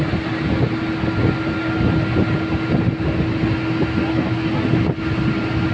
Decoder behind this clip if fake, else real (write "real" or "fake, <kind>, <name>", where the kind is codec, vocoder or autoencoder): real